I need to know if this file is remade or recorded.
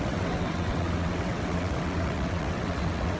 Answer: remade